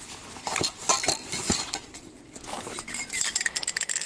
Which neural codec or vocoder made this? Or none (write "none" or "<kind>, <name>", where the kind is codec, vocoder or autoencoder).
none